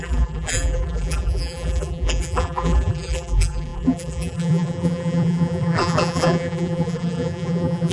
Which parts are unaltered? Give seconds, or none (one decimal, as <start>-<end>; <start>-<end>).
none